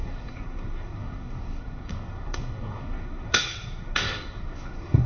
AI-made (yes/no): yes